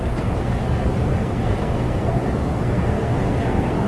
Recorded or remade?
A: remade